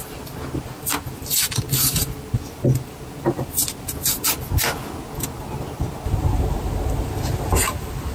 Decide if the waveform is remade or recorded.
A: recorded